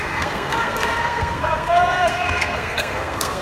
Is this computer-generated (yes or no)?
yes